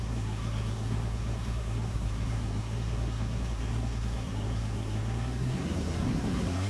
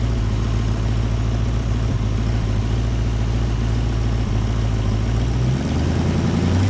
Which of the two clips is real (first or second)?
second